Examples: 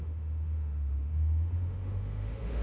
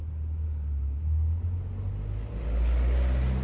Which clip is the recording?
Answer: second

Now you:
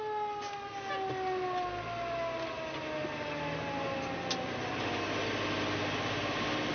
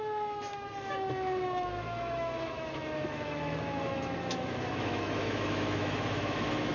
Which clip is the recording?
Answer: first